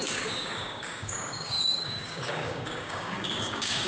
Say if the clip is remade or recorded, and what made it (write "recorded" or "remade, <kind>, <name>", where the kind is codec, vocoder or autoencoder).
remade, codec, DAC